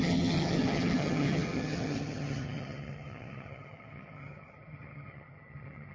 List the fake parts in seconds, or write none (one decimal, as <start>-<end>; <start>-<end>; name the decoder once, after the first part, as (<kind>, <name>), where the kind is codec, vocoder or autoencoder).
0.0-5.9 (vocoder, HiFi-GAN)